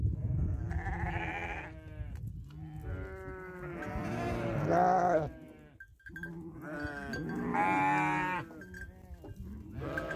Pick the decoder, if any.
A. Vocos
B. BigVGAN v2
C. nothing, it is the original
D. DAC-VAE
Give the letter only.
C